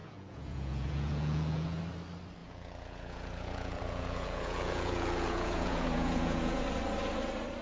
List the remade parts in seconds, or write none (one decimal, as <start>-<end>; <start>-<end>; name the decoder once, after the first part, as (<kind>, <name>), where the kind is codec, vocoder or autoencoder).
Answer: 0.0-1.8 (vocoder, Vocos); 2.4-6.6